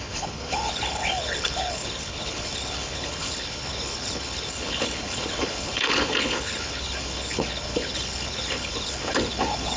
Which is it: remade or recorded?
remade